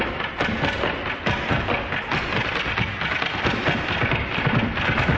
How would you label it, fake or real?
real